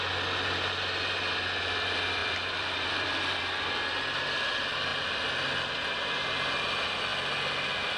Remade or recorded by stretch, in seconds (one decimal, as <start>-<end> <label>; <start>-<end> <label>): 0.0-2.2 recorded; 2.2-3.4 remade; 3.4-8.0 recorded